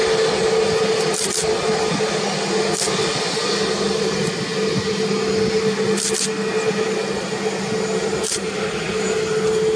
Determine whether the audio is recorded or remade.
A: recorded